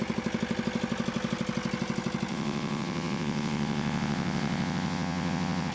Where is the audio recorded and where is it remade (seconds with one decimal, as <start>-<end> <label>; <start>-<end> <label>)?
0.0-2.3 recorded; 2.3-5.7 remade